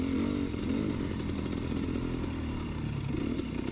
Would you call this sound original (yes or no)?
yes